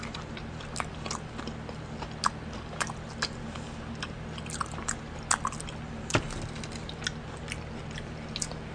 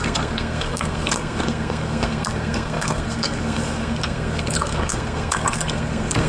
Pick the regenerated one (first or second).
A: second